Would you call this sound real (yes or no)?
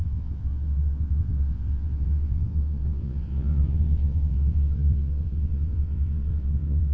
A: no